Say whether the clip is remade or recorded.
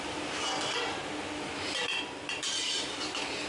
remade